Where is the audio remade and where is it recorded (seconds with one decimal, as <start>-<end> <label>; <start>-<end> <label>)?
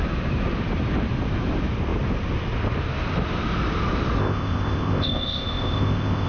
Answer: 0.0-4.2 recorded; 4.2-6.3 remade